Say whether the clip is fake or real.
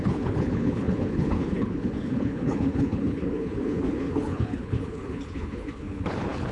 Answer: fake